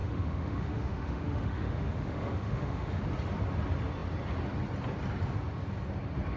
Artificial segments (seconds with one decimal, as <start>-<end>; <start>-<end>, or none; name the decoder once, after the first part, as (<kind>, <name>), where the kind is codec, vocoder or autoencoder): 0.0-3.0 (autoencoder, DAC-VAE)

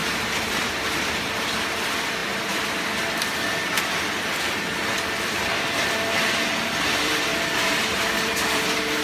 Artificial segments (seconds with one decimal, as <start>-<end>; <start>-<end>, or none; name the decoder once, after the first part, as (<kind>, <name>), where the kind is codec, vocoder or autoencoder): 0.5-2.2 (vocoder, BigVGAN v2); 5.1-9.0

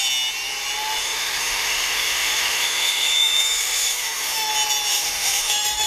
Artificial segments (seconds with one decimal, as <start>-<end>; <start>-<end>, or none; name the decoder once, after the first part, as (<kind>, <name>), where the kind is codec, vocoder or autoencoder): 1.0-4.5 (autoencoder, DAC-VAE); 4.9-5.9